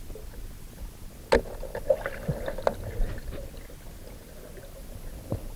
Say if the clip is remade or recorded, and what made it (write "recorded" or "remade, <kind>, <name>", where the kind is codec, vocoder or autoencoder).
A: recorded